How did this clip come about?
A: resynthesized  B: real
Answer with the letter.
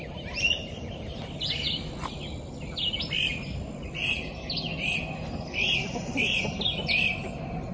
B